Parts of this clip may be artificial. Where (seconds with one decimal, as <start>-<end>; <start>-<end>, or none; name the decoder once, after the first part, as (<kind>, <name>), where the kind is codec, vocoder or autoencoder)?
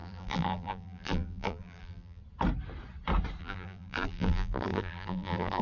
0.0-2.2 (vocoder, BigVGAN v2); 3.4-5.6